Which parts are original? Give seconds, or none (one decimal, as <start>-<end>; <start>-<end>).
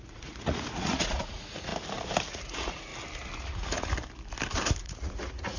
1.7-2.3; 2.9-3.4; 3.9-4.8